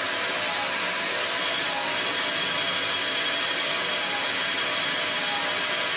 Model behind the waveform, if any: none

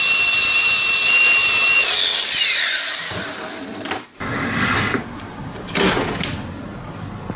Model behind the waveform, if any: vocoder, BigVGAN v2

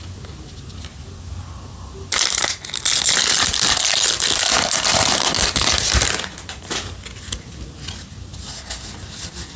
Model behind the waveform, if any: none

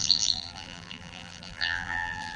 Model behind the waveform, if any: vocoder, BigVGAN v2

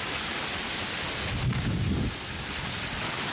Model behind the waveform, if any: none